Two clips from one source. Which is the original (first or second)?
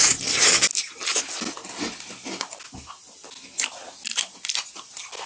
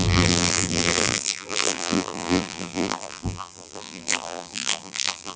first